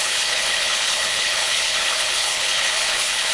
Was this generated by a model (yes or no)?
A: yes